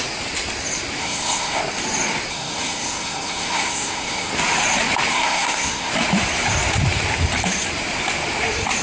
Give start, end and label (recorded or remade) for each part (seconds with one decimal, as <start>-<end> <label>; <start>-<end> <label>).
0.0-1.0 recorded; 1.0-1.6 remade; 1.6-2.3 recorded; 2.3-4.3 remade; 4.3-5.1 recorded; 5.1-5.9 remade; 5.9-8.8 recorded